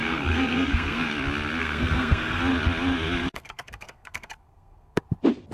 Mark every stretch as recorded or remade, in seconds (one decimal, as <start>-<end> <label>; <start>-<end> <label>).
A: 0.0-1.1 remade; 1.1-1.6 recorded; 1.6-2.4 remade; 2.4-3.2 recorded; 3.2-5.0 remade; 5.0-5.5 recorded